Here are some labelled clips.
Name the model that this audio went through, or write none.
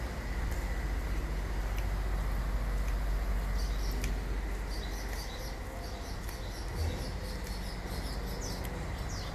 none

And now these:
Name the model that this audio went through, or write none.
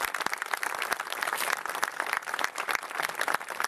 none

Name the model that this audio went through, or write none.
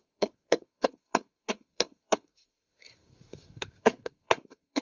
codec, SNAC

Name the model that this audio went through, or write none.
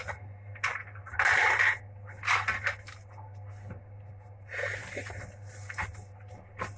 none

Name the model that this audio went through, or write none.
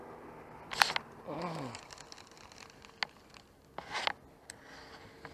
none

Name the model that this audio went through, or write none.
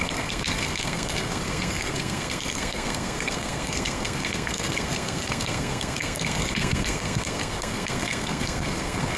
codec, SNAC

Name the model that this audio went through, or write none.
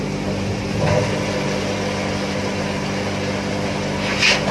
none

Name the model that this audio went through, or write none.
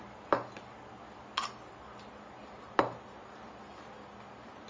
none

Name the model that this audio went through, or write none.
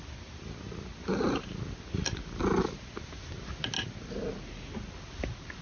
none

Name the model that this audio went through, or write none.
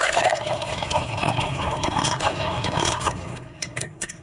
codec, SNAC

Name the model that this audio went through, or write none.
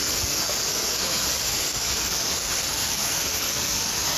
codec, SNAC